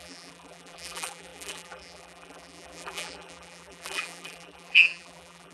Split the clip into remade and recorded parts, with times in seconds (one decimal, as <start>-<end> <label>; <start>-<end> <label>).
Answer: 0.0-5.5 remade

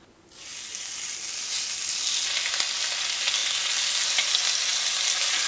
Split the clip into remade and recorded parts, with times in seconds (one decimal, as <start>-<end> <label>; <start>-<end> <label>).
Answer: 0.0-3.4 recorded; 3.4-3.9 remade; 3.9-4.7 recorded; 4.7-5.5 remade

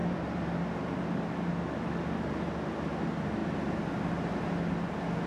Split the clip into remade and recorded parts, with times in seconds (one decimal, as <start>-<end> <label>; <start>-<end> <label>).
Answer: 0.0-1.5 remade; 1.5-3.4 recorded; 3.4-3.9 remade; 3.9-5.3 recorded

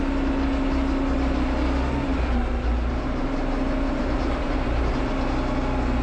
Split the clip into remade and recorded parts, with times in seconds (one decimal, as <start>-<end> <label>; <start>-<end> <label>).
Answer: 0.0-2.1 recorded; 2.1-4.9 remade; 4.9-6.0 recorded

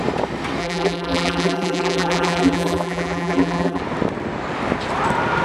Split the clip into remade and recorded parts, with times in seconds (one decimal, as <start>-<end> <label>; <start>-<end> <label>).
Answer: 0.0-0.6 recorded; 0.6-3.8 remade; 3.8-5.4 recorded